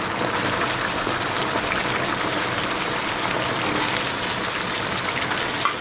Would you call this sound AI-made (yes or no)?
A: no